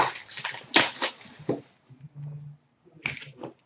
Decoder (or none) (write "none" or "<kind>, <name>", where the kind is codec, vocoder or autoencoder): none